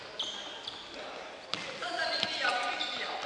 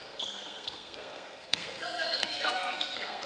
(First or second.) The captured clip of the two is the first